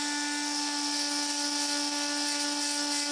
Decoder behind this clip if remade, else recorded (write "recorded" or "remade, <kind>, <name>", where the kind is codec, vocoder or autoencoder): recorded